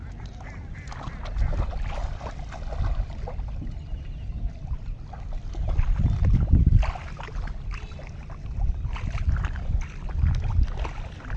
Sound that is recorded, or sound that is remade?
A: recorded